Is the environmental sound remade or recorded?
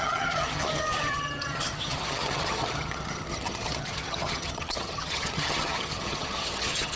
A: remade